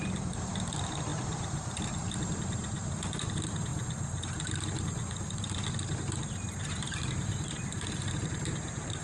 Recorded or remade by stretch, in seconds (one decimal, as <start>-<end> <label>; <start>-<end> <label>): 0.0-9.0 remade